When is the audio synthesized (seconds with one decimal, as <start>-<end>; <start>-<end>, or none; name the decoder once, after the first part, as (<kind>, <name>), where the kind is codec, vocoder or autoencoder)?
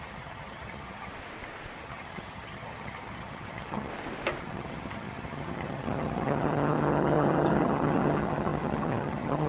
0.0-1.1 (vocoder, HiFi-GAN); 1.8-3.9; 4.4-9.5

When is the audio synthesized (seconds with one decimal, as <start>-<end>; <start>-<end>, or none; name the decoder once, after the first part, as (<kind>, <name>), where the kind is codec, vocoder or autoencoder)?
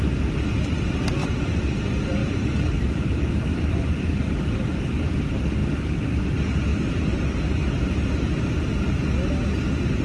1.2-1.8 (vocoder, BigVGAN v2); 2.2-4.4; 6.7-7.2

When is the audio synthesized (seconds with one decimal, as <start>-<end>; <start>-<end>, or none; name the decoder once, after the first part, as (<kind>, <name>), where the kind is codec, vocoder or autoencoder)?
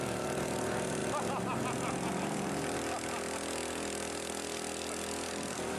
none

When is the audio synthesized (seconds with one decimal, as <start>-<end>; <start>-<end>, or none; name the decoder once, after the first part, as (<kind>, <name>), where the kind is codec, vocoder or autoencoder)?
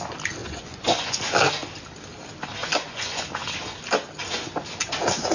0.4-1.2 (vocoder, Vocos); 2.6-3.2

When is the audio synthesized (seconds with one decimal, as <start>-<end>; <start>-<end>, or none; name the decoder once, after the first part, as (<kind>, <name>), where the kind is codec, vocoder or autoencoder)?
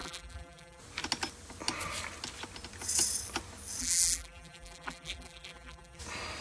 0.0-0.8 (vocoder, BigVGAN v2); 3.8-6.0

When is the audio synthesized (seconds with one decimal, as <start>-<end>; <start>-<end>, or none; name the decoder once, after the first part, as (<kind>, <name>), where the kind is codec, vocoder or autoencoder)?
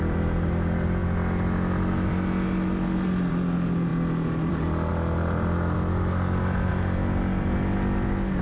none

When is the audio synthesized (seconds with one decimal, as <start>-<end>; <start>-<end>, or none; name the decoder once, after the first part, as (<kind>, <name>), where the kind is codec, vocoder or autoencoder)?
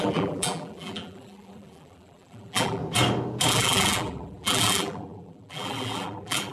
0.0-2.8 (vocoder, BigVGAN v2); 3.5-6.5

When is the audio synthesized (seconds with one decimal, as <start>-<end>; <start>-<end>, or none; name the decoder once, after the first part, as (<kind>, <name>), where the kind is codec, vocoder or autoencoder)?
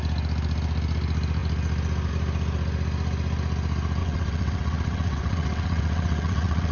4.0-6.7 (vocoder, WaveNeXt)